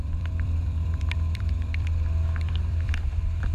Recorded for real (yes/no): no